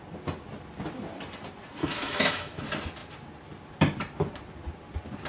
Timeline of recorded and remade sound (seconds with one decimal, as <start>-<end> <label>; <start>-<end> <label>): 0.0-1.8 recorded; 1.8-2.6 remade; 2.6-5.3 recorded